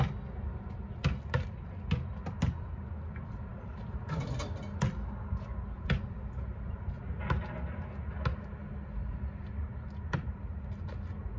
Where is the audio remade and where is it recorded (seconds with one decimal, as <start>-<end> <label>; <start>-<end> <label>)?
0.0-11.4 recorded